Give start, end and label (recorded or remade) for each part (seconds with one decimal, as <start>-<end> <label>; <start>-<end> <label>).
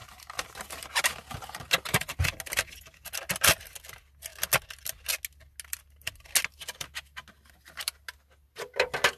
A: 0.0-9.2 recorded